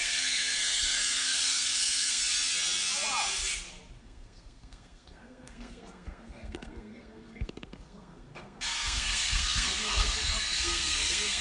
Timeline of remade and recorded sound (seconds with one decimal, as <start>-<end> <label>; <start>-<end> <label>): 0.0-2.2 remade; 2.2-4.0 recorded; 4.0-11.4 remade